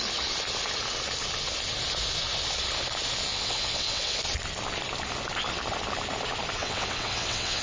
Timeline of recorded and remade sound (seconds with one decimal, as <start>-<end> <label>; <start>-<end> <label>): 0.0-3.3 recorded; 3.3-4.2 remade; 4.2-6.6 recorded; 6.6-7.6 remade